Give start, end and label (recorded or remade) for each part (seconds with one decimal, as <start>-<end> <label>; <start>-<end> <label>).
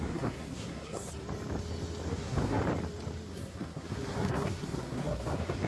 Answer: 0.0-1.1 remade; 1.1-2.1 recorded; 2.1-2.6 remade; 2.6-3.3 recorded; 3.3-5.7 remade